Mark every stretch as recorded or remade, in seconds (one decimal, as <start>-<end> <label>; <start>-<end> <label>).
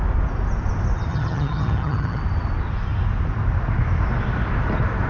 0.0-1.1 recorded; 1.1-2.2 remade; 2.2-5.1 recorded